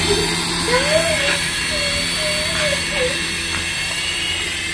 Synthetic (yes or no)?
no